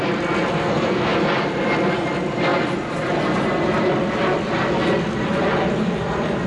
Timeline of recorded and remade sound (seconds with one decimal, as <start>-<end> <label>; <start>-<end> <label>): 0.0-0.6 recorded; 0.6-1.1 remade; 1.1-6.5 recorded